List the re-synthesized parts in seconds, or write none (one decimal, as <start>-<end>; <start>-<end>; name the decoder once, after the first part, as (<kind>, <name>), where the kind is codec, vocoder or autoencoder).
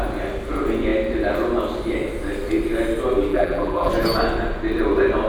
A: 3.3-3.9 (vocoder, BigVGAN v2)